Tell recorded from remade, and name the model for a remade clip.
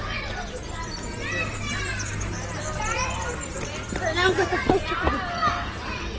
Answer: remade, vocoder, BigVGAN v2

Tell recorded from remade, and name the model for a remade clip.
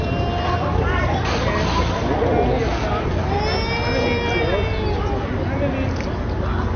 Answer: recorded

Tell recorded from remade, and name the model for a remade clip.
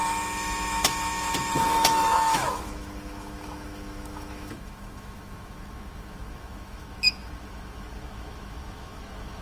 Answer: remade, autoencoder, DAC-VAE